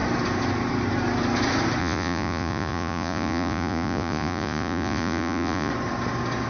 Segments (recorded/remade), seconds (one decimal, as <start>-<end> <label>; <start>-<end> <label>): 0.0-1.8 recorded; 1.8-5.7 remade; 5.7-6.5 recorded